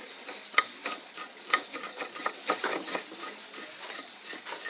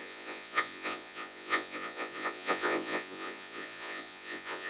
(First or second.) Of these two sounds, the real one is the first